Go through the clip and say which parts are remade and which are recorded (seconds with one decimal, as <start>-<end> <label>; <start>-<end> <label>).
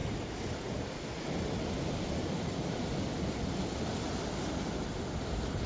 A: 0.0-5.7 recorded